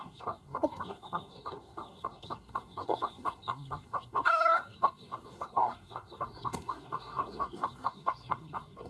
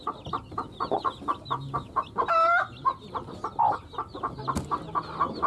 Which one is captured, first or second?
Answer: second